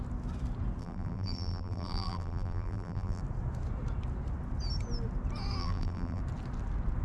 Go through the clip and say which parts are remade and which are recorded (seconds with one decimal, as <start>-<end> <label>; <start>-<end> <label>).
0.0-0.8 recorded; 0.8-3.2 remade; 3.2-5.6 recorded; 5.6-6.2 remade; 6.2-7.0 recorded